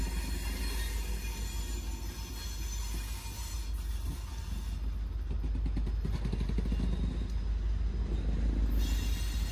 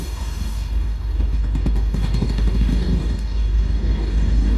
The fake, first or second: second